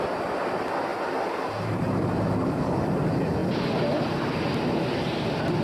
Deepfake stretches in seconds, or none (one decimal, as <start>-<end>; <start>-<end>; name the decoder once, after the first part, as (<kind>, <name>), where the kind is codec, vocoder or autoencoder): none